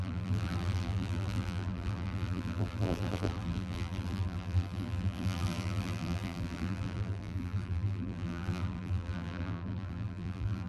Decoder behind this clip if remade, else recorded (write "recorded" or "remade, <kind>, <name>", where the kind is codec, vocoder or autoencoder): remade, vocoder, BigVGAN v2